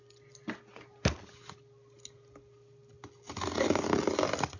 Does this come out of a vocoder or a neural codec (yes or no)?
no